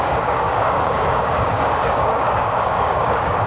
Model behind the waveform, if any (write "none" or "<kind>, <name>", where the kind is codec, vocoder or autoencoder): codec, DAC